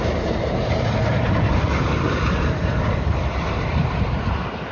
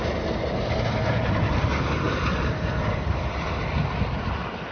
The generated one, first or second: first